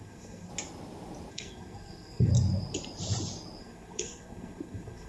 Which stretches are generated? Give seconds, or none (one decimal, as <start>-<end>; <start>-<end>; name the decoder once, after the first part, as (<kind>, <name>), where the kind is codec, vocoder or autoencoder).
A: 0.0-0.5 (codec, SNAC); 1.3-2.3; 3.6-5.1